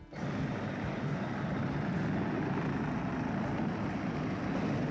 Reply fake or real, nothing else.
real